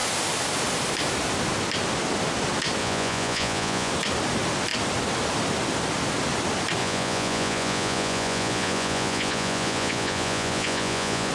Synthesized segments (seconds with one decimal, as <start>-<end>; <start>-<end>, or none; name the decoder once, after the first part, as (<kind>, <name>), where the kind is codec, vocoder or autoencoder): 2.8-3.9 (vocoder, Vocos); 6.8-11.3